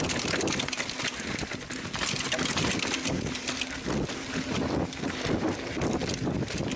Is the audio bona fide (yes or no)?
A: yes